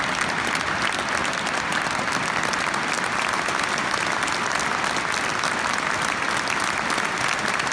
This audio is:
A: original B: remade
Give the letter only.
A